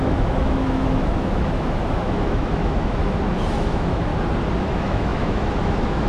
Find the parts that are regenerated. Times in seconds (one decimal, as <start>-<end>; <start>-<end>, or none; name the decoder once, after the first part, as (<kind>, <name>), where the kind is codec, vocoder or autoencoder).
0.0-3.0 (autoencoder, DAC-VAE); 3.5-4.1; 4.6-6.1